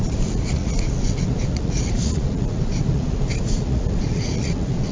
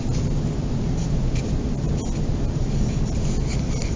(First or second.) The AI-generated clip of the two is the first